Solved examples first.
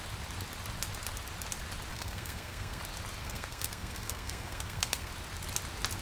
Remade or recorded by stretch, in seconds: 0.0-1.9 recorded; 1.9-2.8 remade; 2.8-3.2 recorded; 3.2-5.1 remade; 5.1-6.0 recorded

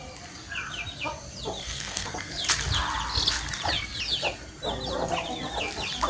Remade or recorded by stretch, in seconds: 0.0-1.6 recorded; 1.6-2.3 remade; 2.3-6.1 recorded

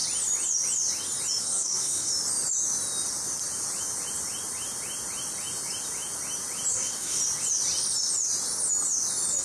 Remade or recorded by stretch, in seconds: 0.0-1.4 recorded; 1.4-2.1 remade; 2.1-6.7 recorded; 6.7-7.2 remade; 7.2-9.4 recorded

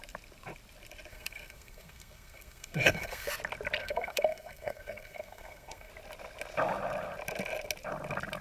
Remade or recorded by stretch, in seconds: 0.0-1.1 recorded; 1.1-3.3 remade; 3.3-3.8 recorded; 3.8-5.9 remade; 5.9-8.4 recorded

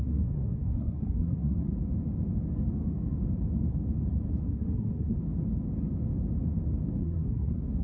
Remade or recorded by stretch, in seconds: 0.0-1.7 remade; 1.7-4.4 recorded; 4.4-5.2 remade; 5.2-7.0 recorded; 7.0-7.8 remade